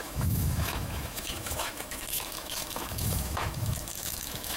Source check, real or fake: fake